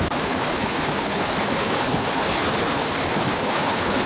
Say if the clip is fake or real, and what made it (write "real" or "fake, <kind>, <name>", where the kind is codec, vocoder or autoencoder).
fake, codec, HILCodec